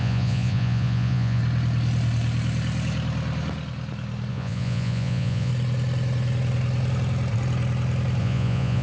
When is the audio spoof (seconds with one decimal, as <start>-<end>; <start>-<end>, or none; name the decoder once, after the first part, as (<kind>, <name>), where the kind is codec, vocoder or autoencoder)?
0.0-1.4 (vocoder, Vocos); 4.3-5.5; 8.2-8.8